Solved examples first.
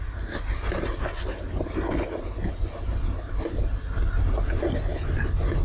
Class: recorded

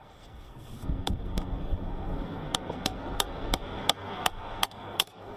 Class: remade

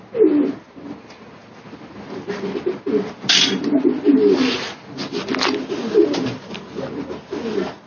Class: recorded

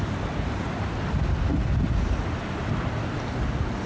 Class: recorded